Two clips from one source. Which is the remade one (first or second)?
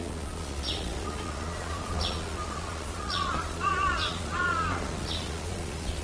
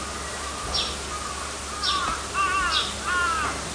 first